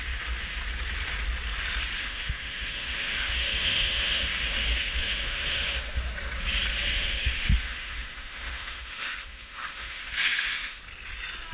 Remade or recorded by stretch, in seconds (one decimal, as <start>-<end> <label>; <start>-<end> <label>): 0.0-2.0 recorded; 2.0-6.0 remade; 6.0-6.9 recorded; 6.9-10.8 remade; 10.8-11.5 recorded